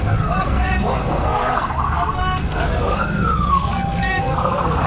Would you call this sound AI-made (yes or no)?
yes